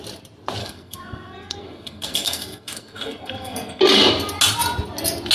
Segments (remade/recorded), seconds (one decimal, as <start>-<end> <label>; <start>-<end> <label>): 0.0-0.6 recorded; 0.6-3.8 remade; 3.8-5.3 recorded